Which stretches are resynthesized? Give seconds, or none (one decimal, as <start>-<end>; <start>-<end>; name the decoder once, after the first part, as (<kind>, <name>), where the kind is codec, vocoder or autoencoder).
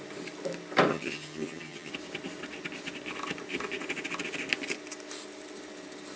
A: 0.9-1.9 (vocoder, HiFi-GAN)